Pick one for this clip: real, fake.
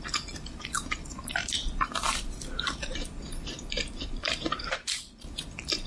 fake